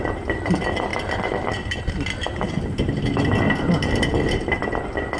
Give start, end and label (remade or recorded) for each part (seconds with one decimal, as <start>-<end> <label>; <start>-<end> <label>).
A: 0.0-5.2 recorded